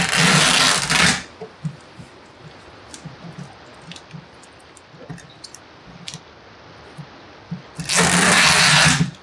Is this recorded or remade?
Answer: recorded